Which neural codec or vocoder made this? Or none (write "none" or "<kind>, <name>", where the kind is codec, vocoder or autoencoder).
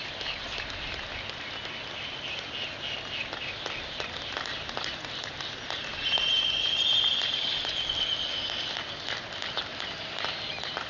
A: none